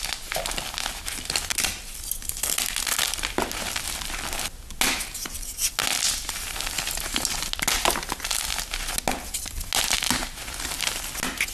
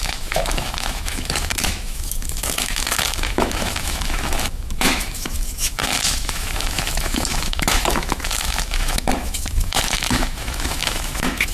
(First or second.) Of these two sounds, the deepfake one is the second